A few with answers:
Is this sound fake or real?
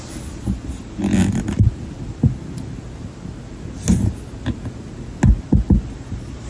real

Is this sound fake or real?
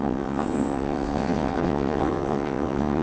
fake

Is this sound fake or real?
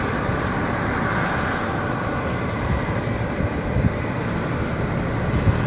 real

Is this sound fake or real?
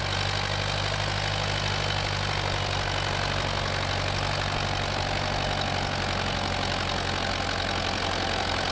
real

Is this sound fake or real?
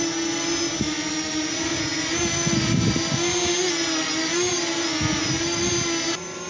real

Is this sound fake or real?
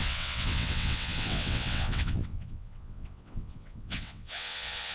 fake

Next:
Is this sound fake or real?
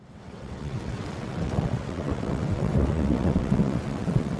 fake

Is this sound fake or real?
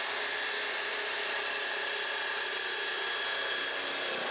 real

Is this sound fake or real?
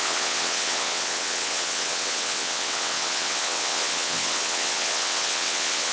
fake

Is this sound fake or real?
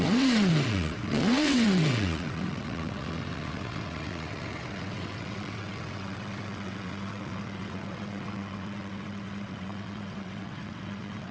fake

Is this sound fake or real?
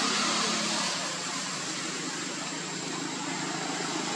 real